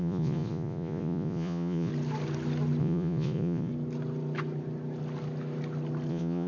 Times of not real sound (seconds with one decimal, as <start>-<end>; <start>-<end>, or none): 0.0-1.9; 2.8-3.7; 6.1-6.5